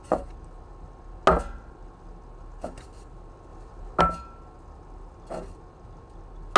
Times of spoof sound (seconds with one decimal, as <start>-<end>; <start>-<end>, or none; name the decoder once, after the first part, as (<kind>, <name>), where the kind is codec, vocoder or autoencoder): none